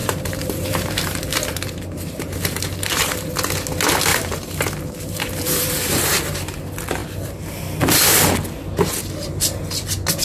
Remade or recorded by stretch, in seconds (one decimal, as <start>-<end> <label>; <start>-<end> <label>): 0.0-3.3 remade; 3.3-4.1 recorded; 4.1-6.6 remade; 6.6-10.2 recorded